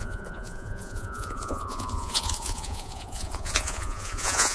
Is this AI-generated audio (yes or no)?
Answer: yes